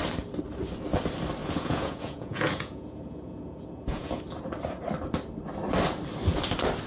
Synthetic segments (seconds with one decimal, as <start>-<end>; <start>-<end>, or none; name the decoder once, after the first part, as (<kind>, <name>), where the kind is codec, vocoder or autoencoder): 1.4-4.2 (vocoder, Vocos)